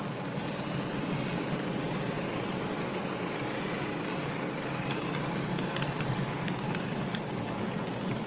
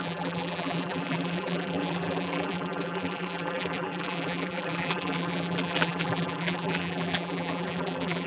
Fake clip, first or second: second